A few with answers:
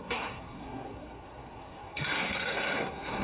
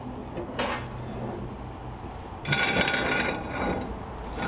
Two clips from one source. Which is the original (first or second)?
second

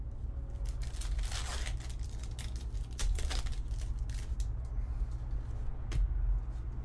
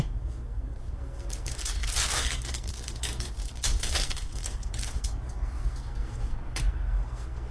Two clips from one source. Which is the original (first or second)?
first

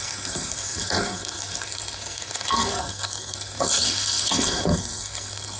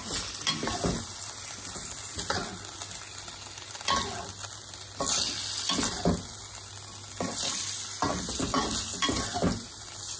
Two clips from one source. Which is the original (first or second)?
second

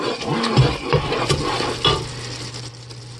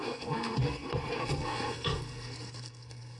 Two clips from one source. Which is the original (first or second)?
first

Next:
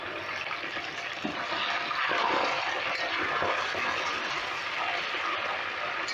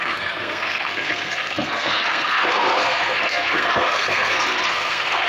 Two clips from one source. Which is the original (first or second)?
first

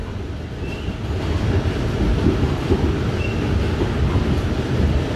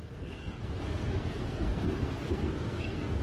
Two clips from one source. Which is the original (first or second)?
first